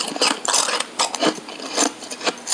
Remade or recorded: recorded